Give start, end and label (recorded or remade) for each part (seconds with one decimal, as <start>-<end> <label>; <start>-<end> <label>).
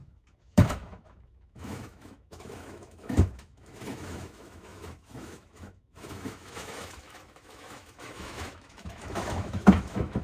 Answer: 0.0-10.2 remade